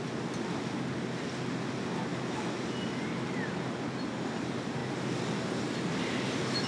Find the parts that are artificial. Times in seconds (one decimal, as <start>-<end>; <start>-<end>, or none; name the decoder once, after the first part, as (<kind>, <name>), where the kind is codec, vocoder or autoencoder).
2.1-2.6 (autoencoder, DAC-VAE)